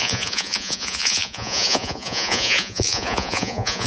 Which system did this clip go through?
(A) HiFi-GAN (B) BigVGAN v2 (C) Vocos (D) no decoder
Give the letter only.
C